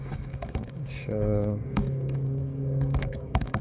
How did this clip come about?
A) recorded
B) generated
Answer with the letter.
B